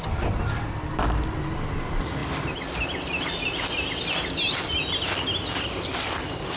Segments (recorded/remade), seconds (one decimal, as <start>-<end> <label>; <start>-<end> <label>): 0.0-6.6 recorded